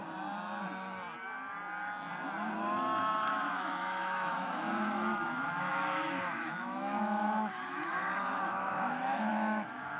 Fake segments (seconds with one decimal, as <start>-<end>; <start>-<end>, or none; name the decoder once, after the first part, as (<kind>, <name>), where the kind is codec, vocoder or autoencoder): 3.3-10.0 (autoencoder, DAC-VAE)